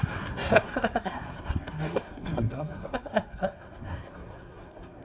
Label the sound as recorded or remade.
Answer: remade